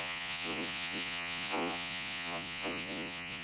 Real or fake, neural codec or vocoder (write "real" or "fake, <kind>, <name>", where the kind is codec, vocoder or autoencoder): fake, vocoder, Vocos